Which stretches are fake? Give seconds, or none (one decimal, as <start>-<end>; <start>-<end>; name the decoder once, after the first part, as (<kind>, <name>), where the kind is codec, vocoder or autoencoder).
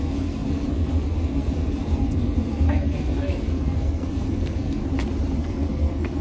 0.0-4.8 (codec, SNAC); 5.4-6.2